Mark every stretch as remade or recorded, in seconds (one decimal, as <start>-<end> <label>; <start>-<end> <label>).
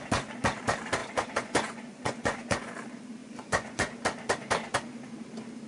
0.0-1.0 recorded; 1.0-2.7 remade; 2.7-3.2 recorded; 3.2-3.9 remade; 3.9-5.7 recorded